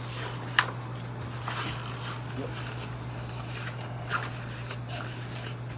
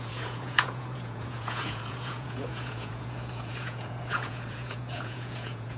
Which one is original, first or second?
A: first